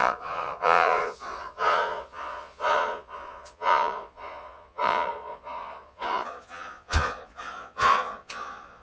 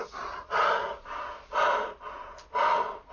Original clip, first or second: second